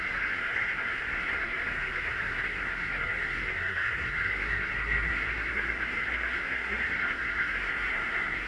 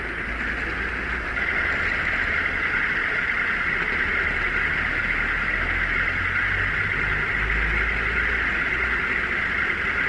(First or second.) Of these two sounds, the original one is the second